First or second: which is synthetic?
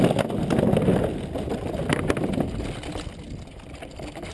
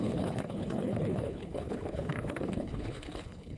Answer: second